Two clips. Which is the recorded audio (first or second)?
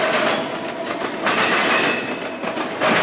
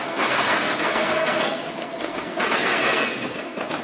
first